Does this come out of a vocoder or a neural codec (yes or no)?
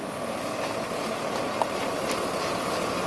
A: no